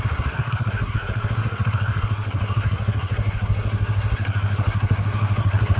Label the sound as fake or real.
fake